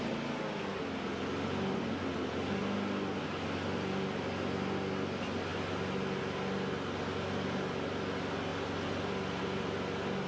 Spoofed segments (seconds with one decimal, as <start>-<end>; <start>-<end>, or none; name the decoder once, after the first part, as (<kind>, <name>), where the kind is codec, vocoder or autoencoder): none